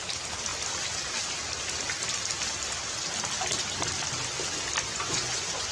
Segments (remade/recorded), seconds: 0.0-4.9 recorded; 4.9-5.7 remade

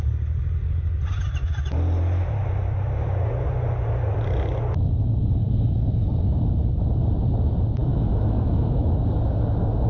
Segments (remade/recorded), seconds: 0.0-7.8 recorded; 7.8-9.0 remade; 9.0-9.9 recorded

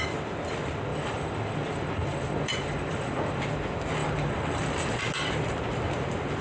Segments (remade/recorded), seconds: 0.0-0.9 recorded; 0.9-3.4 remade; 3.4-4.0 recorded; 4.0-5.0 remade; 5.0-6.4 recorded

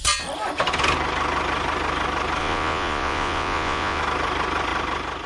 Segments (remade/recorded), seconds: 0.0-2.4 recorded; 2.4-4.0 remade; 4.0-5.3 recorded